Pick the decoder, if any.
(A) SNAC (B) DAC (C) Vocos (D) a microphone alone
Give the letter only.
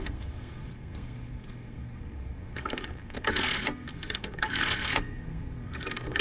A